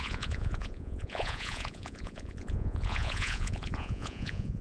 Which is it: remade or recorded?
remade